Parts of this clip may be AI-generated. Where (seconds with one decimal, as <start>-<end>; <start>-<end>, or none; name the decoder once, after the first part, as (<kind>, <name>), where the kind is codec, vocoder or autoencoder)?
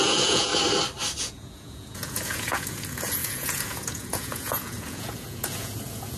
0.0-0.5 (vocoder, Vocos); 1.2-6.2